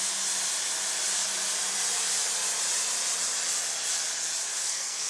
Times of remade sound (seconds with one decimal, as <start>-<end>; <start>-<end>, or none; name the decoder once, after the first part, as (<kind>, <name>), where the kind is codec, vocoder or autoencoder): 4.5-5.1 (codec, SNAC)